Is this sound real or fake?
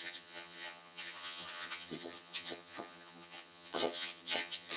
fake